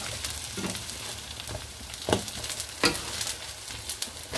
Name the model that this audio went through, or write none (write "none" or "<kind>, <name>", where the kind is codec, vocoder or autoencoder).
none